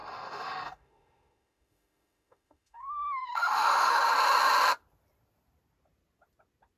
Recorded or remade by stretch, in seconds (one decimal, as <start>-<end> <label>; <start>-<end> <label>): 0.0-4.0 remade; 4.0-6.8 recorded